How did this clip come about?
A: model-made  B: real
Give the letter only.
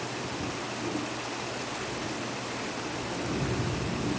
B